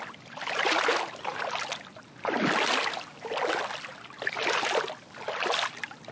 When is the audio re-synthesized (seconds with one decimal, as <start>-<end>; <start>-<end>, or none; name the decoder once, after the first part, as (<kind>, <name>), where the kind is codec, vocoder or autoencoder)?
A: none